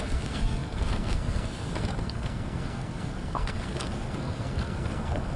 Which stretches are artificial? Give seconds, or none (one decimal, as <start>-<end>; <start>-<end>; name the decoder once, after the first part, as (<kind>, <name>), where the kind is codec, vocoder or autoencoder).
0.0-5.4 (codec, SNAC)